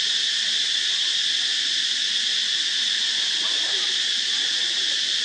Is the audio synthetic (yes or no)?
no